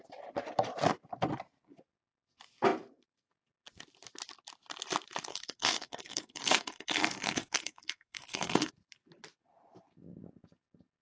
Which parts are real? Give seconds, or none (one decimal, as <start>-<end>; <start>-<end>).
0.0-5.3; 8.7-11.0